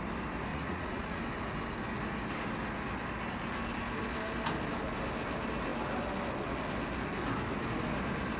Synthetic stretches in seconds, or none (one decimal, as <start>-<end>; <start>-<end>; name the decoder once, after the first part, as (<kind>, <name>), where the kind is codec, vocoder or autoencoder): 0.5-1.2 (vocoder, Vocos)